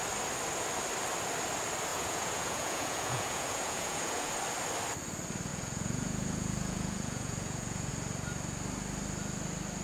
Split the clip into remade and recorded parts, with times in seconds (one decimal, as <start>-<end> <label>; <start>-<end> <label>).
0.0-1.9 recorded; 1.9-4.3 remade; 4.3-5.5 recorded; 5.5-7.9 remade; 7.9-9.8 recorded